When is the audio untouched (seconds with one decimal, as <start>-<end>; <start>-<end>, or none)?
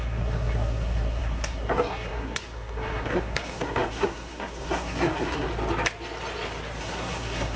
5.5-6.8